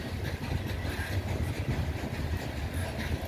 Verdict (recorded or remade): recorded